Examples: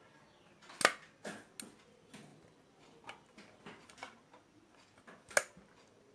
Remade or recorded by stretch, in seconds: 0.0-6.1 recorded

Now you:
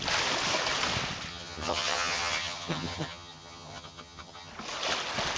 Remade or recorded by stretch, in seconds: 0.0-1.3 recorded; 1.3-4.5 remade; 4.5-5.4 recorded

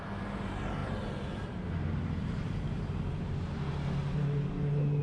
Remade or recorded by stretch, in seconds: 0.0-0.8 recorded; 0.8-3.0 remade; 3.0-5.0 recorded

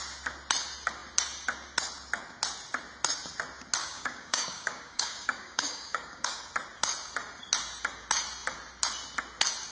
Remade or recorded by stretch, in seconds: 0.0-3.8 recorded; 3.8-6.4 remade; 6.4-9.7 recorded

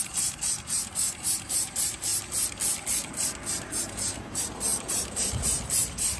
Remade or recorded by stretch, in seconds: 0.0-2.1 remade; 2.1-3.5 recorded; 3.5-6.2 remade

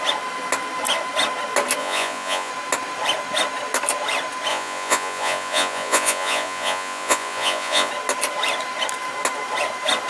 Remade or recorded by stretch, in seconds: 0.0-1.8 recorded; 1.8-2.5 remade; 2.5-4.5 recorded; 4.5-7.9 remade; 7.9-10.1 recorded